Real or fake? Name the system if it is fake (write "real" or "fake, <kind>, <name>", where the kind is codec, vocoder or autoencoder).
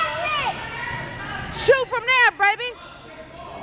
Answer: real